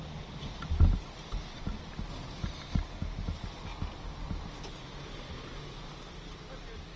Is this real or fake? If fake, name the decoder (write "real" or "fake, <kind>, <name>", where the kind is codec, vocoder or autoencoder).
real